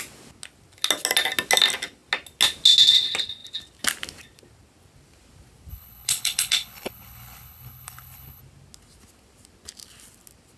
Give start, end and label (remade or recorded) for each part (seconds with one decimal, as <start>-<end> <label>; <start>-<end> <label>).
0.0-5.7 recorded; 5.7-8.4 remade; 8.4-10.6 recorded